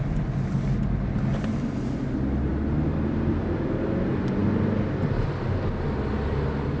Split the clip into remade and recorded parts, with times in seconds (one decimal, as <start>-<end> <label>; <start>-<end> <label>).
0.0-6.8 recorded